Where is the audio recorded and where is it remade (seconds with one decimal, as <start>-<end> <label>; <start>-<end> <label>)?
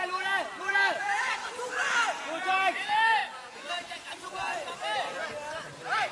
0.0-6.1 recorded